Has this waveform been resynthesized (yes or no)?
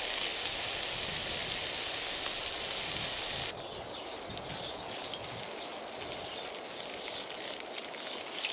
no